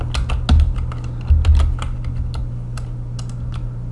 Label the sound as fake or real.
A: real